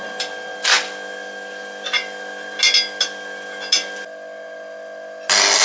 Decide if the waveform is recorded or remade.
recorded